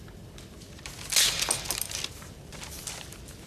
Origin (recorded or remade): recorded